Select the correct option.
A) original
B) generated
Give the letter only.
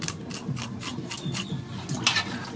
A